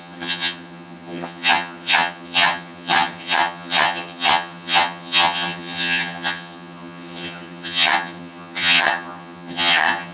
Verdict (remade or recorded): remade